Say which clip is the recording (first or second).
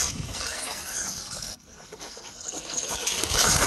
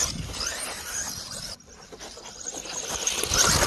second